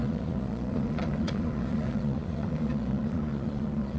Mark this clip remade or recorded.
remade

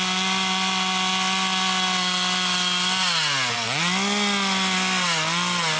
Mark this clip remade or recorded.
recorded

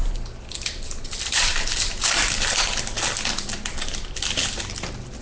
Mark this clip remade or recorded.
recorded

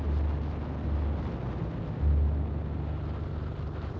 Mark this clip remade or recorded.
recorded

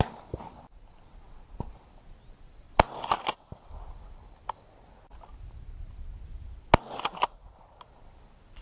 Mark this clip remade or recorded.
recorded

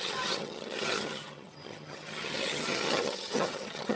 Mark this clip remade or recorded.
remade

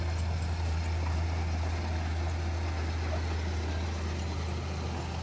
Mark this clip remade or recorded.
recorded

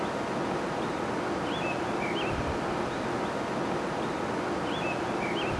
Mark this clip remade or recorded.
recorded